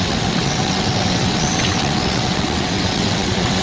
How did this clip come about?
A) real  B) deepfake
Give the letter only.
B